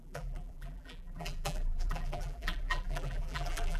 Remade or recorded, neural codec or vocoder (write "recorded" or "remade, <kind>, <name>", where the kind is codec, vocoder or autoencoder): remade, vocoder, BigVGAN v2